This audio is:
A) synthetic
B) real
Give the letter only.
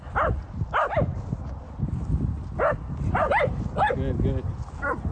B